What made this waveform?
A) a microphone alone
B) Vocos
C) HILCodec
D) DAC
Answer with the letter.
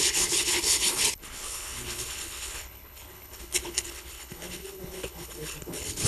C